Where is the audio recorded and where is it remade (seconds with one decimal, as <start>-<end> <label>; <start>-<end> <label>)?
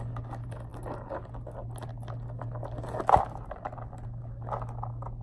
0.0-5.2 recorded